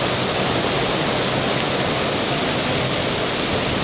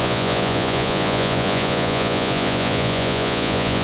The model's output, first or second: second